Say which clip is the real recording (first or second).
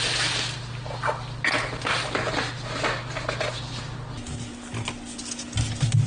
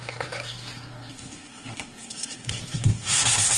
first